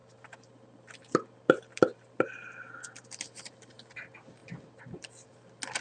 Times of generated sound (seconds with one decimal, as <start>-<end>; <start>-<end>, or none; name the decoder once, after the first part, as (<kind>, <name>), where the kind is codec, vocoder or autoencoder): 0.0-3.5 (vocoder, BigVGAN v2); 4.4-5.3